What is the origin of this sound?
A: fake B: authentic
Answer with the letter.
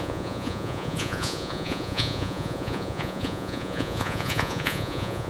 A